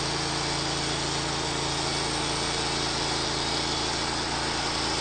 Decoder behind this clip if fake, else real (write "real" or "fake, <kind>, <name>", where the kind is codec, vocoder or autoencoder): real